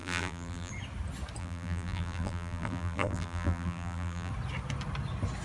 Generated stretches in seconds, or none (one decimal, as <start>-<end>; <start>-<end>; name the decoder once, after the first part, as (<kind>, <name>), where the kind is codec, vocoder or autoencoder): 0.0-0.7 (vocoder, BigVGAN v2); 1.4-4.3